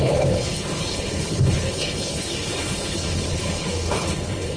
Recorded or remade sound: remade